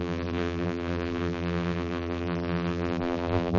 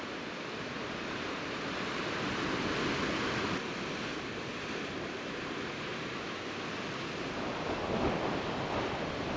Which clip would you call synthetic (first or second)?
first